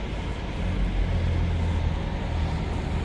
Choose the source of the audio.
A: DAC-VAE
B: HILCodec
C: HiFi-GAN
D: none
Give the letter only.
D